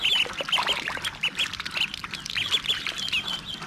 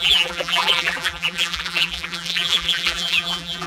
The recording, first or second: first